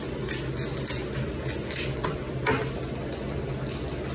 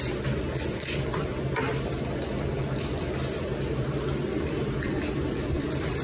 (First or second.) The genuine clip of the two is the first